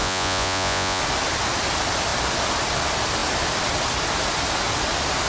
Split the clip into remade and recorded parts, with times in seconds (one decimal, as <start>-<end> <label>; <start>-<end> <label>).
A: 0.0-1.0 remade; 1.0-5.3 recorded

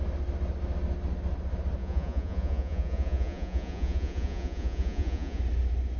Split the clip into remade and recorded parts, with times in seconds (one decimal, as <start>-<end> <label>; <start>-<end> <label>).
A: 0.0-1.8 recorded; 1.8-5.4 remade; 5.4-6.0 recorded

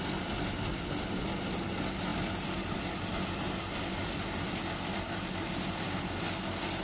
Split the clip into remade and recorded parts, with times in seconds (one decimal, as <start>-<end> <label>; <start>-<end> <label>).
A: 0.0-6.8 recorded

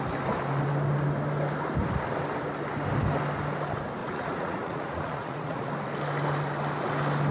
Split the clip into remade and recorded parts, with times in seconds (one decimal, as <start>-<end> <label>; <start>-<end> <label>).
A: 0.0-4.0 recorded; 4.0-5.7 remade; 5.7-7.3 recorded